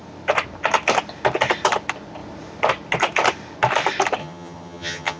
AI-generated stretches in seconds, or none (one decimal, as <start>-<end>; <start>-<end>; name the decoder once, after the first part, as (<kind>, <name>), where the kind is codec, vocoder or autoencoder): 4.2-5.2 (vocoder, HiFi-GAN)